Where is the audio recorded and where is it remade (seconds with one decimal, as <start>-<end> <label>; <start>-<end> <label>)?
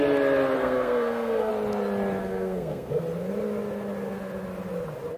0.0-0.6 recorded; 0.6-1.5 remade; 1.5-2.2 recorded; 2.2-3.0 remade; 3.0-5.2 recorded